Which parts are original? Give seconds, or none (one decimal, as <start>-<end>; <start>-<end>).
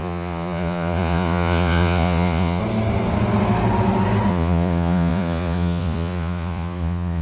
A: 2.6-4.3